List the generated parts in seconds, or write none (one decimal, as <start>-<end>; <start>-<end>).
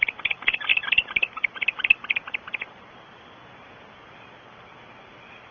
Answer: 0.7-2.9